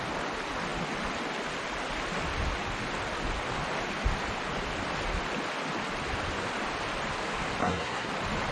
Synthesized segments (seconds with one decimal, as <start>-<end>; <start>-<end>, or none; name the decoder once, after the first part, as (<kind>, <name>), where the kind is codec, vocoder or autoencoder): 7.6-8.1 (codec, SNAC)